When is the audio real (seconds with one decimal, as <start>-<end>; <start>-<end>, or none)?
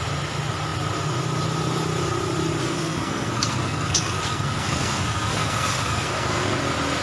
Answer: 0.0-2.6; 6.6-7.0